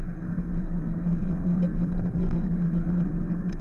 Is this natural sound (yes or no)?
no